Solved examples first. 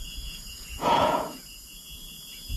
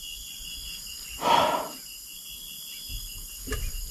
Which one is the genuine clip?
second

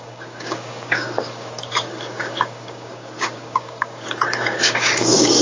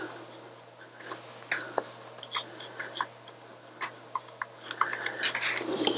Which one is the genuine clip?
second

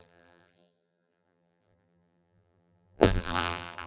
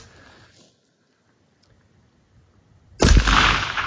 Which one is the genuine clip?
second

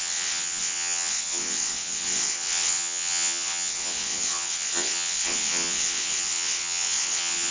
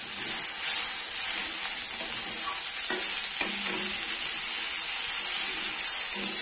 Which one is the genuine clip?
second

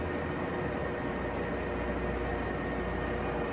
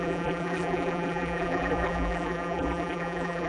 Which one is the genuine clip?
first